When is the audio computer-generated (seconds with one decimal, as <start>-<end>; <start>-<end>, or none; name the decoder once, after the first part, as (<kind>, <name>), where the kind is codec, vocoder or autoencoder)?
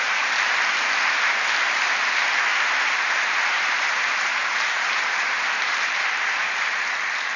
2.5-6.9 (vocoder, BigVGAN v2)